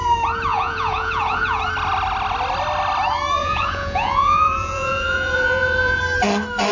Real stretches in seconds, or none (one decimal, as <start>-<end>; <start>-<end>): 0.0-0.5; 1.6-3.4; 6.0-6.7